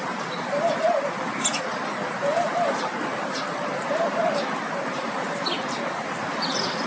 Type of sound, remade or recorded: recorded